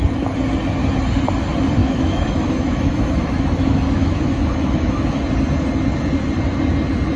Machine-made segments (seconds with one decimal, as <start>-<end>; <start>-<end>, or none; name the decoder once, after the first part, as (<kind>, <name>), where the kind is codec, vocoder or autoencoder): 1.8-5.2 (autoencoder, DAC-VAE)